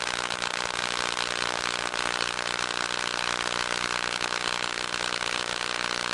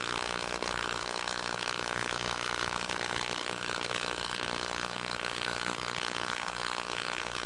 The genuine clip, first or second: first